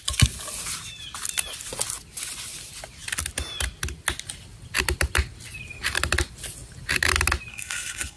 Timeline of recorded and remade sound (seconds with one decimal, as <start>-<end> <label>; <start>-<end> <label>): 0.0-7.5 recorded; 7.5-8.2 remade